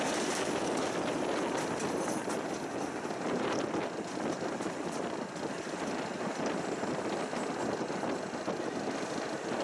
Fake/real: real